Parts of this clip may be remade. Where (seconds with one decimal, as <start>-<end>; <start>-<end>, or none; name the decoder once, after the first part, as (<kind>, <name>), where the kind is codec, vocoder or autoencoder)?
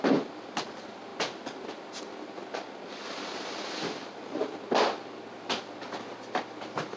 none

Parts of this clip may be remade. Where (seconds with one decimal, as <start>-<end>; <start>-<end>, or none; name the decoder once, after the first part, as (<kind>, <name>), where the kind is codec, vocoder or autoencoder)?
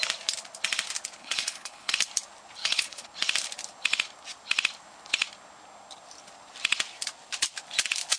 1.2-1.9 (codec, HILCodec); 2.6-3.1